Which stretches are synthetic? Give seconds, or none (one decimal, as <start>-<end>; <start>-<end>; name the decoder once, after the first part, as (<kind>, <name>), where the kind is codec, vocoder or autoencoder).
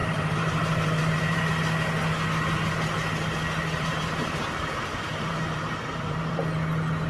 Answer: 0.0-1.4 (vocoder, BigVGAN v2); 3.6-4.4; 4.9-6.4